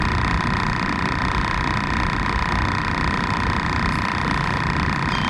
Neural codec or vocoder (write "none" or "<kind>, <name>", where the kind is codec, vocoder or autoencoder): vocoder, BigVGAN v2